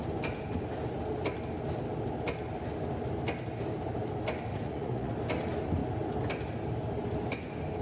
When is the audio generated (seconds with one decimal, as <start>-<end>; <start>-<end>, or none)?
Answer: 4.5-5.1